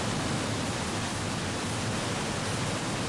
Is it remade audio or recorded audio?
recorded